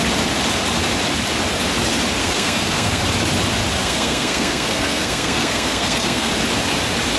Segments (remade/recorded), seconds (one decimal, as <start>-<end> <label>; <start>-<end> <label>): 0.0-2.2 recorded; 2.2-3.0 remade; 3.0-3.8 recorded; 3.8-6.3 remade; 6.3-7.2 recorded